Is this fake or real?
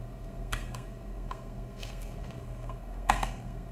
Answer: fake